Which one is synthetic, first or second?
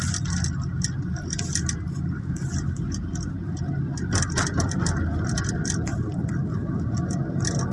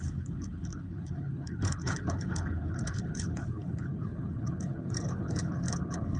second